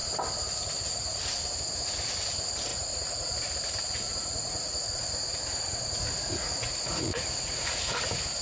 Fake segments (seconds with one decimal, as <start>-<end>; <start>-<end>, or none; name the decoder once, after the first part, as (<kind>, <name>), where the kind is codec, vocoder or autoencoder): 2.7-3.3 (vocoder, Vocos); 4.1-7.9